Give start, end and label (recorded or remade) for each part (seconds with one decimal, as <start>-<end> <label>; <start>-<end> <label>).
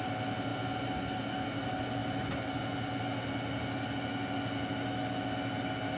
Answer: 0.0-6.0 recorded